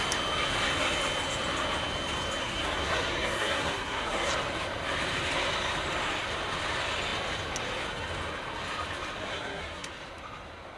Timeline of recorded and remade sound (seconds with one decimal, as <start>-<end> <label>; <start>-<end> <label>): 0.0-2.4 recorded; 2.4-4.3 remade; 4.3-9.3 recorded; 9.3-9.9 remade; 9.9-10.8 recorded